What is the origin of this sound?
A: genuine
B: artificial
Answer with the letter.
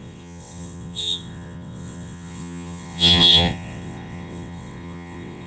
B